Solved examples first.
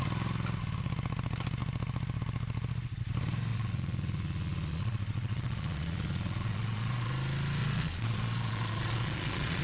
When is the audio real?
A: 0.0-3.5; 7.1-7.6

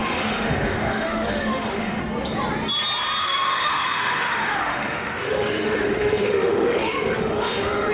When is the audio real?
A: 2.0-3.2

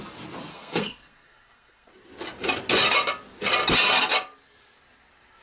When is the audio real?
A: 0.0-0.5; 1.9-5.4

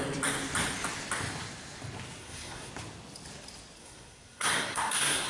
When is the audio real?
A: 0.0-2.2; 2.7-3.8

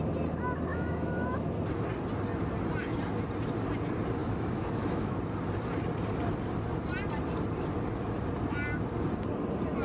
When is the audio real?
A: 0.0-0.7; 1.5-4.2; 5.2-9.8

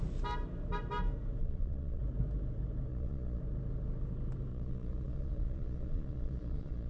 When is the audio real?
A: 0.0-1.4; 2.0-2.9; 3.4-4.5

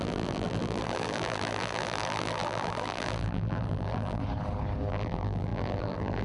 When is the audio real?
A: 4.2-4.9

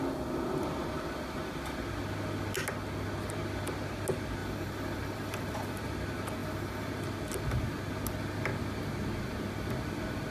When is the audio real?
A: 0.0-4.4; 5.8-6.4; 6.9-10.3